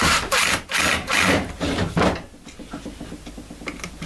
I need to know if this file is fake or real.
real